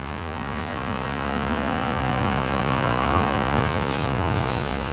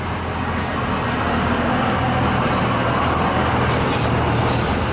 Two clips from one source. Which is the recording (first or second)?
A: second